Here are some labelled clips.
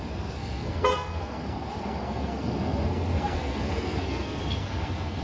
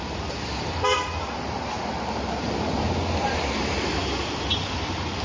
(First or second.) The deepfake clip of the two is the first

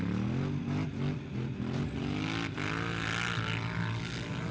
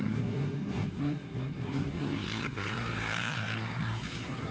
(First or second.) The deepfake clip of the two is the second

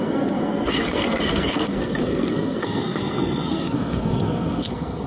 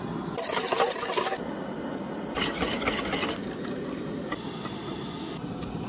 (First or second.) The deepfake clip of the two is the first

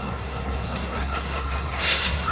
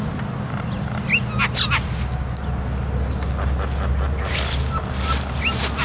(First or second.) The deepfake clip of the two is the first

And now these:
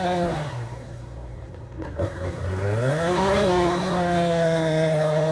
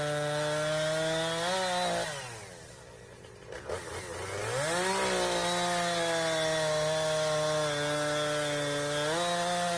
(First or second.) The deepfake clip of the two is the first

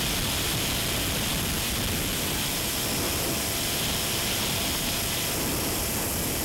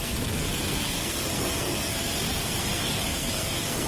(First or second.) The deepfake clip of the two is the second